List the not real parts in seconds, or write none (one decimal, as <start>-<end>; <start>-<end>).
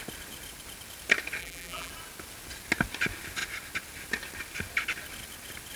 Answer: 1.4-1.9